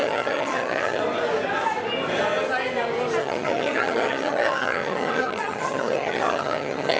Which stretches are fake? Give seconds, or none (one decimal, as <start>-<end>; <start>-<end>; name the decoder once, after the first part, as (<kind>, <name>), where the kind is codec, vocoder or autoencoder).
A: 0.0-1.0 (vocoder, HiFi-GAN); 3.2-7.0